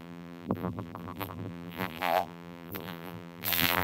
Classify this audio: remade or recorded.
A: remade